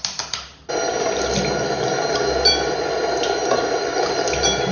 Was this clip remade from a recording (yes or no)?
no